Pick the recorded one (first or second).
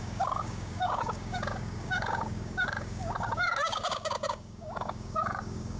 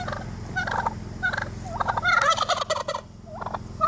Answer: second